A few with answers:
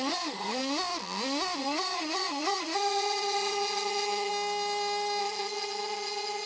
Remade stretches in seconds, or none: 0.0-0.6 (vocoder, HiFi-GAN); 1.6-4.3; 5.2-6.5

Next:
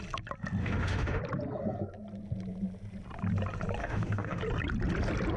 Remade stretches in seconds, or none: 0.6-1.2 (autoencoder, DAC-VAE); 3.8-4.4

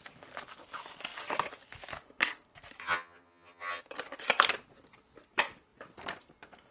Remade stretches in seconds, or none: 2.8-3.8 (vocoder, HiFi-GAN)

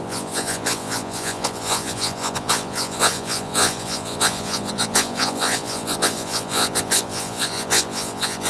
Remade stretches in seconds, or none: 0.0-8.5 (vocoder, Vocos)

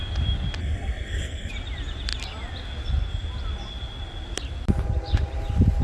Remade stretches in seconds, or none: 0.6-1.5 (codec, SNAC)